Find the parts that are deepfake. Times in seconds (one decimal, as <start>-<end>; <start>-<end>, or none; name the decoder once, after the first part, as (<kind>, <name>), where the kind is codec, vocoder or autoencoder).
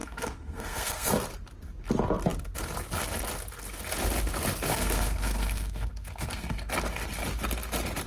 0.0-1.1 (codec, SNAC); 4.7-6.7